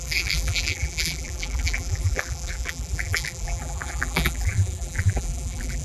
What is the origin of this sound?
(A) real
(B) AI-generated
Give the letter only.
B